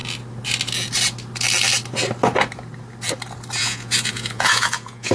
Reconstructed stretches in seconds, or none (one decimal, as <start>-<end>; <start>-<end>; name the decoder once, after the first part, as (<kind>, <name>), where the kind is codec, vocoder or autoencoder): 3.6-5.1 (vocoder, Vocos)